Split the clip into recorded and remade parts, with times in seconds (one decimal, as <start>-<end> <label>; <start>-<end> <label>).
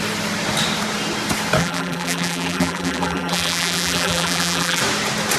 0.0-1.6 recorded; 1.6-4.8 remade; 4.8-5.4 recorded